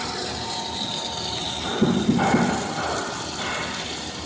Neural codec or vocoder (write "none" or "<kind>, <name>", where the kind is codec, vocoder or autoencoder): none